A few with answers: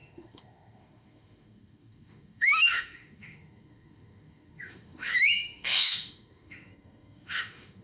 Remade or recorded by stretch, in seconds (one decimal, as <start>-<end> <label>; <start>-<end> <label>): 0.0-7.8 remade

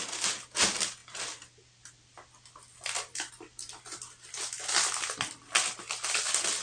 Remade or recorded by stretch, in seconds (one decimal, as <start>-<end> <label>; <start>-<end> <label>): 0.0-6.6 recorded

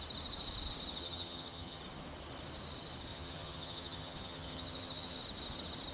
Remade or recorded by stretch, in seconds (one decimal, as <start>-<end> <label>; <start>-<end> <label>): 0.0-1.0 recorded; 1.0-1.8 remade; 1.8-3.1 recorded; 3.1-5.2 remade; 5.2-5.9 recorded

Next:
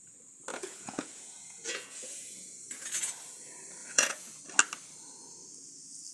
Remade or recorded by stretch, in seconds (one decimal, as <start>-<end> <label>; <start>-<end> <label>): 0.0-0.5 recorded; 0.5-3.1 remade; 3.1-3.8 recorded; 3.8-4.4 remade; 4.4-6.1 recorded

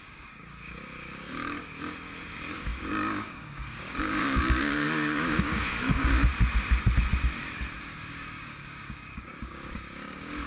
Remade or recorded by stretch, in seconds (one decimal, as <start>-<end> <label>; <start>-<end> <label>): 0.0-6.3 remade; 6.3-7.8 recorded; 7.8-10.5 remade

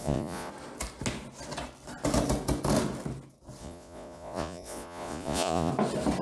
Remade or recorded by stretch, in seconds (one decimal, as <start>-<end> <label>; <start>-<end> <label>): 0.0-0.5 remade; 0.5-3.6 recorded; 3.6-5.7 remade; 5.7-6.2 recorded